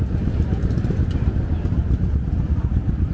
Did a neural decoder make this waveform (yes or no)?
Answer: no